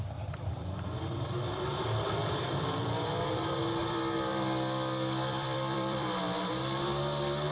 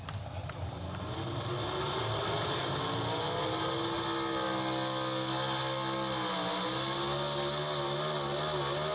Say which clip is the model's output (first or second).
first